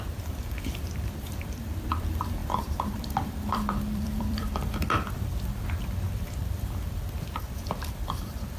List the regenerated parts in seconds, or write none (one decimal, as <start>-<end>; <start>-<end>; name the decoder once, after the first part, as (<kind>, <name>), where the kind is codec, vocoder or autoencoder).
0.0-8.6 (vocoder, BigVGAN v2)

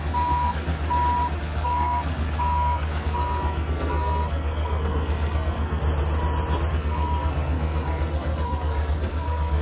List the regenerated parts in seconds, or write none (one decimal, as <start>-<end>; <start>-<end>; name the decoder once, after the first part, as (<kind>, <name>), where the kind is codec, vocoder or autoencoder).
0.0-0.7 (codec, SNAC); 1.4-5.8; 6.7-9.6

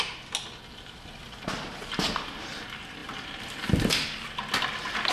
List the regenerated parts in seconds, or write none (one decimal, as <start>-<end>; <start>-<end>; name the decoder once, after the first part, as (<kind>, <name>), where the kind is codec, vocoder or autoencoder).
none

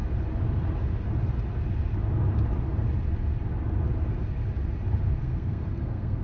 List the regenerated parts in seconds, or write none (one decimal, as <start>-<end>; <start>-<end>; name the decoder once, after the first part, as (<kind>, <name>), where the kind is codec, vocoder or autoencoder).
5.2-6.2 (codec, SNAC)

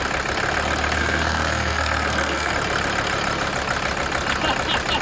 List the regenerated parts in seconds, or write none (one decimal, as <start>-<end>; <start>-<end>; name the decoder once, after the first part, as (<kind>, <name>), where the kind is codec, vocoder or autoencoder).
1.0-2.5 (codec, SNAC)

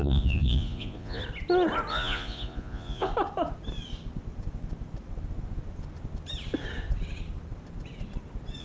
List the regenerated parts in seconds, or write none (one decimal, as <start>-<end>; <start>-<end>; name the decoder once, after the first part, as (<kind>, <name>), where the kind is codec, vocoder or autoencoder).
0.0-1.2 (vocoder, Vocos); 1.9-3.1

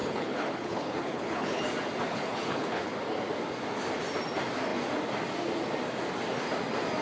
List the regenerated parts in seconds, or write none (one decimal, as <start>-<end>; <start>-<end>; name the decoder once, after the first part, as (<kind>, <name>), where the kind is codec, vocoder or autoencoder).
0.0-1.6 (codec, HILCodec); 2.1-2.9